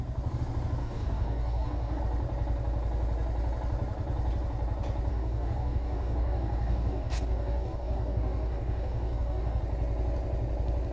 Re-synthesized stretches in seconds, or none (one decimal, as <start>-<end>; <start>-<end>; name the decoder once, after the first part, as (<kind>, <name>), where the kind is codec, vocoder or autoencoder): 0.8-2.0 (codec, DAC); 5.1-9.6